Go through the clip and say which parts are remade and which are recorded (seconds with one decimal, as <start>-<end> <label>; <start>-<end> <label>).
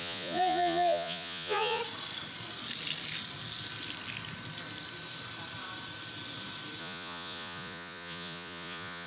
0.0-1.8 remade; 1.8-6.8 recorded; 6.8-9.1 remade